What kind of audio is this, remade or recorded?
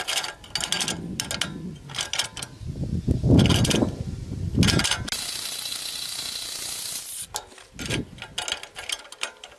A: recorded